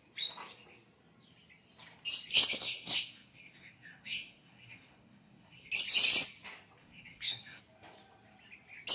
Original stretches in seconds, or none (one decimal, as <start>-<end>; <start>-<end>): 0.0-2.3; 5.7-6.8; 7.6-8.9